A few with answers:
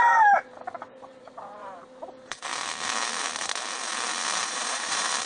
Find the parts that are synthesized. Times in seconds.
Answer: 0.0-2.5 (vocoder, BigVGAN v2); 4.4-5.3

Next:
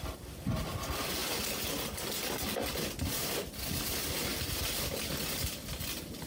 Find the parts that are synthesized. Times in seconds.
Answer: none